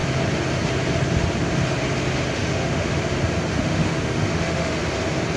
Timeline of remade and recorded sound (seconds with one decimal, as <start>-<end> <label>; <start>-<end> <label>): 0.0-2.4 recorded; 2.4-3.0 remade; 3.0-3.5 recorded; 3.5-4.8 remade; 4.8-5.4 recorded